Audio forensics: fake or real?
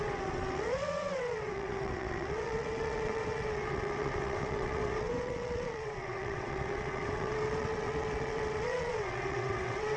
fake